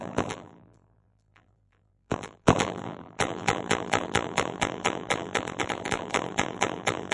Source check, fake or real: fake